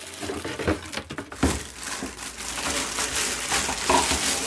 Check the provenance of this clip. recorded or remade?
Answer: recorded